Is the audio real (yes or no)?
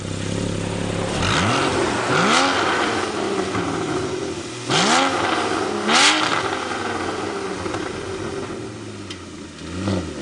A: yes